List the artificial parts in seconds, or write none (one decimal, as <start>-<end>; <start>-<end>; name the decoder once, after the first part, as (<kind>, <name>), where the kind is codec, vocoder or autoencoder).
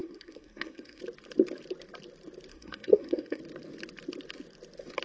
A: 0.0-1.0 (codec, SNAC); 2.5-3.4